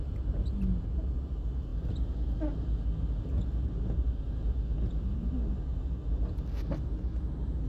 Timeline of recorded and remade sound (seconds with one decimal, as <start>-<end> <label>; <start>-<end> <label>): 0.0-7.7 recorded